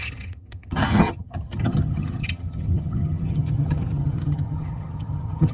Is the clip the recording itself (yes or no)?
no